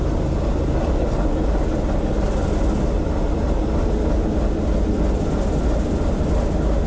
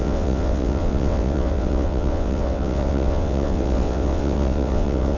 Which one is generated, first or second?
second